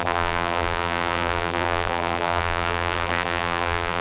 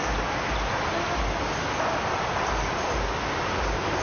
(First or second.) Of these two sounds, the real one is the second